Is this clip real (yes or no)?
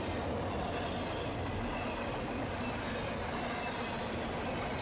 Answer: yes